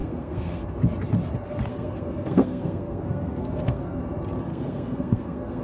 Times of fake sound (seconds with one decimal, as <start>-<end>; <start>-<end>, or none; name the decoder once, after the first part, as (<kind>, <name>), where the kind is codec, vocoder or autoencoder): 0.0-0.6 (codec, SNAC); 1.7-4.0; 4.5-5.6